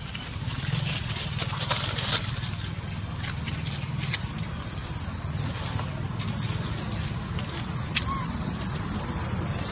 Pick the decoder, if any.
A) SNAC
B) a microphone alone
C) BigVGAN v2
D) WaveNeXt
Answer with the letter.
B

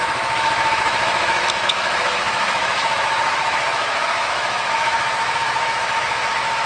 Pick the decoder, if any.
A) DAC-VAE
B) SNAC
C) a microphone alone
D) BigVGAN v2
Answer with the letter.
A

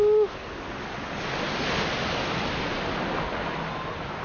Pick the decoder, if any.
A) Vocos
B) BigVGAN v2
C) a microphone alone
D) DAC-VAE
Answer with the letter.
C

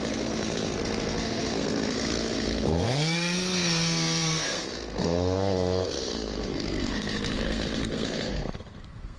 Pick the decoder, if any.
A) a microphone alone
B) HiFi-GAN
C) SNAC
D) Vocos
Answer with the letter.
C